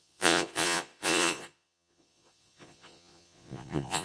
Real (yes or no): no